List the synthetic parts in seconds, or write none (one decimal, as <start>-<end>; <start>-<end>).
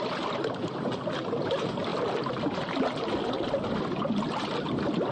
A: none